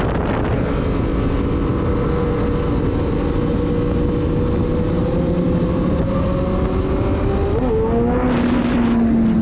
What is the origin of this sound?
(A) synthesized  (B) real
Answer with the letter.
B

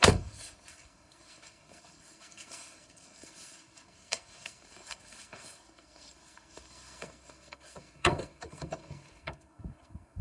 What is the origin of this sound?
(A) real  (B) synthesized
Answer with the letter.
B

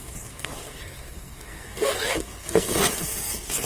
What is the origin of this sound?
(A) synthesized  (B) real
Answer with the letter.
A